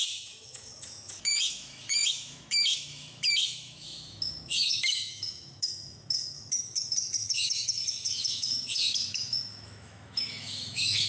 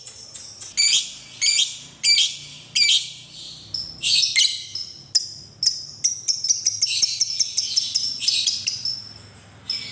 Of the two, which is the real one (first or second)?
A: second